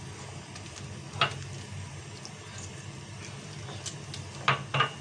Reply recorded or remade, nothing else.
recorded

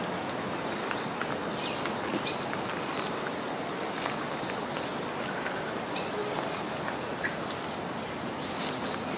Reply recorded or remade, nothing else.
recorded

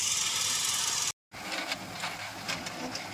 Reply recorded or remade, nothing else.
recorded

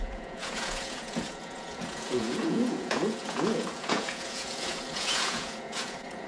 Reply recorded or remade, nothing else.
remade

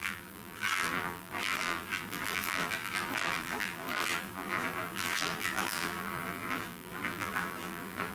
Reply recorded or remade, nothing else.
remade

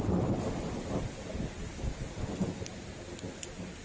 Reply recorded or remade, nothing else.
recorded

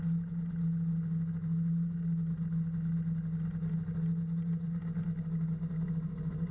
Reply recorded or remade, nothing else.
recorded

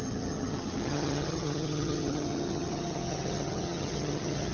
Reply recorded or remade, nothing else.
remade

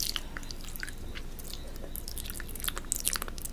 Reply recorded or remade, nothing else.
recorded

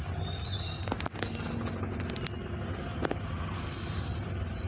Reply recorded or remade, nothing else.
recorded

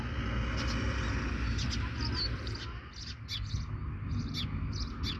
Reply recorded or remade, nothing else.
recorded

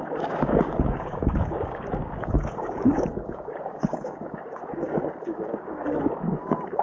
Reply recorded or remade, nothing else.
remade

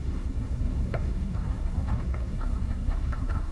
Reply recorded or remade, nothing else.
remade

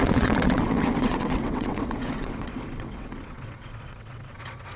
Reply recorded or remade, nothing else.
remade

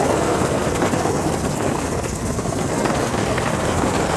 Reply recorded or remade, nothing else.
remade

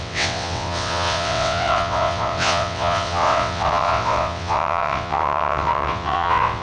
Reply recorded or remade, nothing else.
remade